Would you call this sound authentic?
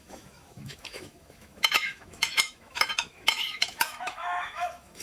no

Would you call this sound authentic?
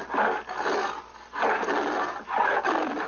yes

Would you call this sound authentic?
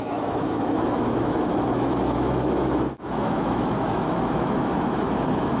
no